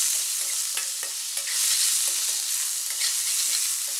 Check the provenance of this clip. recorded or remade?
recorded